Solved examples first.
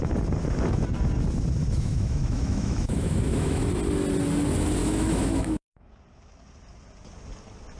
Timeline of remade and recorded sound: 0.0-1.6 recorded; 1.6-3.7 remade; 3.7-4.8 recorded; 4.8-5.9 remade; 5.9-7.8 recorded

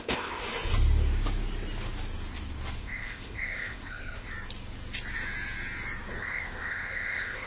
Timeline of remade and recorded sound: 0.0-0.4 remade; 0.4-2.8 recorded; 2.8-4.3 remade; 4.3-6.2 recorded; 6.2-7.5 remade

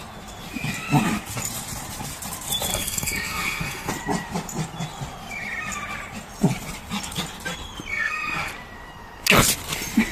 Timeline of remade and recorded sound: 0.0-2.7 recorded; 2.7-3.9 remade; 3.9-7.9 recorded; 7.9-8.5 remade; 8.5-10.1 recorded

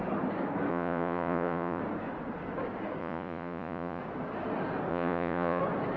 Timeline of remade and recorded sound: 0.0-0.7 recorded; 0.7-1.8 remade; 1.8-3.0 recorded; 3.0-4.0 remade; 4.0-4.9 recorded; 4.9-5.6 remade; 5.6-6.0 recorded